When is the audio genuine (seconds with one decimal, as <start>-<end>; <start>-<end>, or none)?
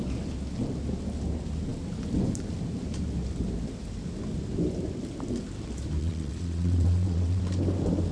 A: 0.0-6.0; 7.4-8.1